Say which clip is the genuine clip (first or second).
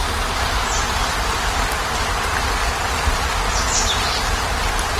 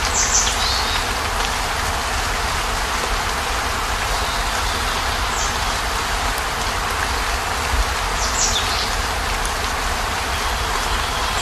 second